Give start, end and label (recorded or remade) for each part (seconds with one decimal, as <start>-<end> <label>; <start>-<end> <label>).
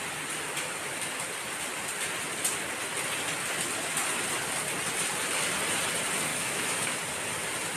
0.0-6.3 recorded; 6.3-7.0 remade; 7.0-7.8 recorded